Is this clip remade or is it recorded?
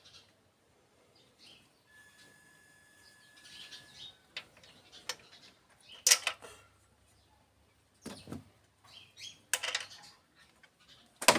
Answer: recorded